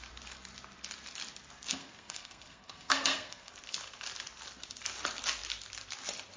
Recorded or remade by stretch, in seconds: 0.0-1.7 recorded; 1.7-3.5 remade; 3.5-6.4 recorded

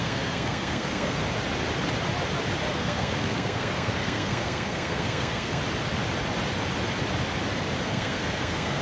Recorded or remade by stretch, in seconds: 0.0-1.2 remade; 1.2-2.7 recorded; 2.7-5.6 remade; 5.6-7.8 recorded; 7.8-8.8 remade